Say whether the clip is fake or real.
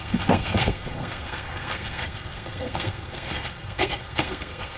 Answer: fake